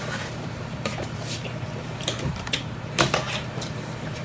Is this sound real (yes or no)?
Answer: no